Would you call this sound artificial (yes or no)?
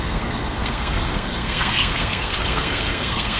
yes